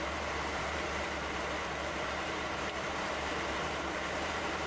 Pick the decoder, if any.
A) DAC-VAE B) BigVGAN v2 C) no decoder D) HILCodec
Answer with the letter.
B